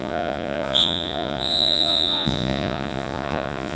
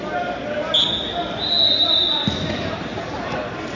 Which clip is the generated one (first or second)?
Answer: first